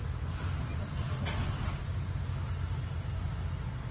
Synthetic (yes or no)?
no